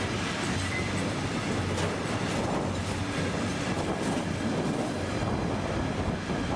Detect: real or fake real